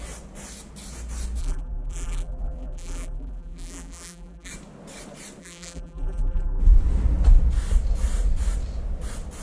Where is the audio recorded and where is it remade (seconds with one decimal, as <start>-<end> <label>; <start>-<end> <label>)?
0.0-1.4 recorded; 1.4-4.5 remade; 4.5-5.4 recorded; 5.4-6.6 remade; 6.6-9.4 recorded